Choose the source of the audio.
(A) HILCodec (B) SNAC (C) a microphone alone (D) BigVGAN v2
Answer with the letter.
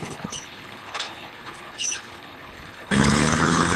A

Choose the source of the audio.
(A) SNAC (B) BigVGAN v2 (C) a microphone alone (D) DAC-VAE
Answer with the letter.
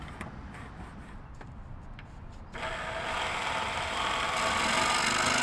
C